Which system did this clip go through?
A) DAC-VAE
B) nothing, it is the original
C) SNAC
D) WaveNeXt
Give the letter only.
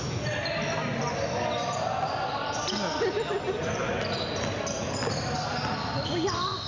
B